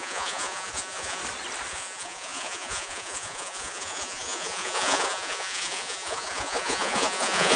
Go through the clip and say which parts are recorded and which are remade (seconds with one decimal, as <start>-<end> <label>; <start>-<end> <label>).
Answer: 0.0-1.2 remade; 1.2-1.7 recorded; 1.7-7.6 remade